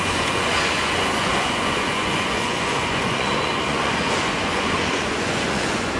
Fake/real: fake